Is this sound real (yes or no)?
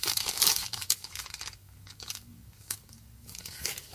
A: no